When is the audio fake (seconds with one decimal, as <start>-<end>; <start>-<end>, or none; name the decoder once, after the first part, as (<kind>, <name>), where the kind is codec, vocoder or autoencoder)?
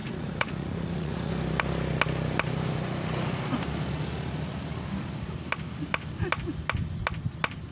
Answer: 0.0-1.3 (vocoder, Vocos)